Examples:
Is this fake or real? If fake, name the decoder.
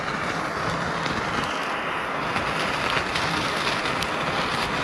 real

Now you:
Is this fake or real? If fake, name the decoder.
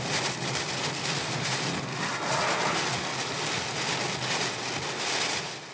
real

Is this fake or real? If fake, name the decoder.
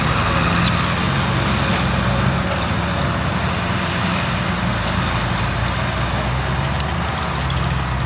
real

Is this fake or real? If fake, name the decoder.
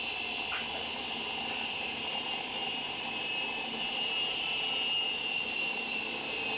fake, vocoder, BigVGAN v2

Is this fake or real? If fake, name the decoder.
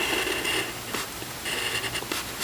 real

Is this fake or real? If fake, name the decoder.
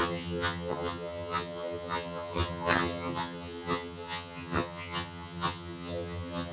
fake, vocoder, HiFi-GAN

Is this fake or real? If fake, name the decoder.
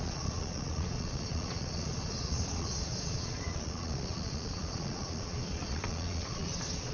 fake, vocoder, Vocos